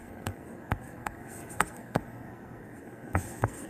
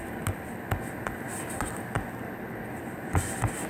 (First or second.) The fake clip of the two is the first